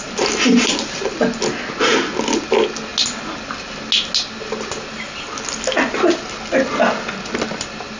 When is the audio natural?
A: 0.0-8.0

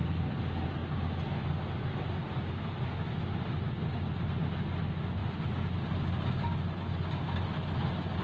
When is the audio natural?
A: 0.0-8.2

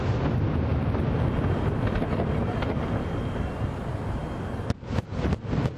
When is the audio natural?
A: 0.0-5.8

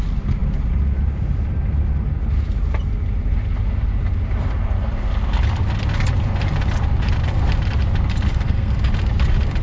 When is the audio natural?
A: 0.0-8.3; 8.9-9.6